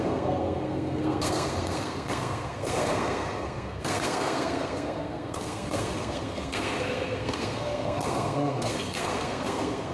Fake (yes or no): yes